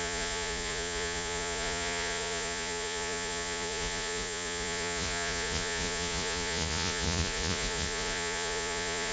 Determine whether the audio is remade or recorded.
remade